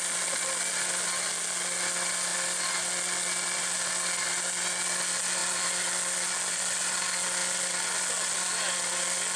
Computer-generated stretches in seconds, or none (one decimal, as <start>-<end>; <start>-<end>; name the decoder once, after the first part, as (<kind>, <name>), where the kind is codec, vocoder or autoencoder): none